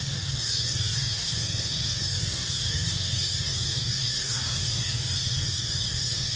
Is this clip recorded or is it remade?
remade